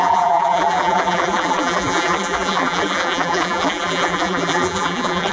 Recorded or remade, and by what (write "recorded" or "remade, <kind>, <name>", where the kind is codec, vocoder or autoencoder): remade, vocoder, BigVGAN v2